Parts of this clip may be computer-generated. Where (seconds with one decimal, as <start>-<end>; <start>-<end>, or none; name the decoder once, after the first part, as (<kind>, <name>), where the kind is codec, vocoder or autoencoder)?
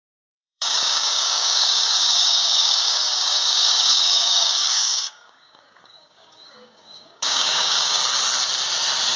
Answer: 0.0-8.0 (codec, DAC)